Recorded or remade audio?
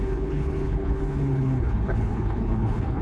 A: remade